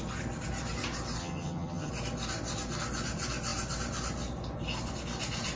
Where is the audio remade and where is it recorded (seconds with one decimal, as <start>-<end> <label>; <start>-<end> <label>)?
0.0-1.2 recorded; 1.2-1.9 remade; 1.9-5.6 recorded